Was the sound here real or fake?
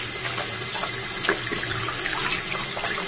real